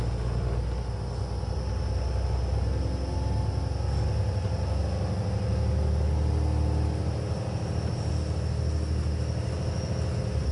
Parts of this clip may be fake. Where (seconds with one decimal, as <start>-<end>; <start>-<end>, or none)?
none